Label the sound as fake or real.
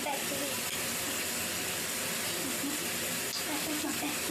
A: real